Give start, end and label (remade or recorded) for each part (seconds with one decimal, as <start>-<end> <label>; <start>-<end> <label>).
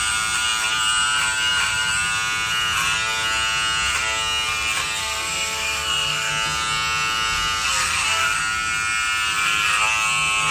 0.0-5.0 recorded; 5.0-6.3 remade; 6.3-7.8 recorded; 7.8-8.4 remade; 8.4-10.5 recorded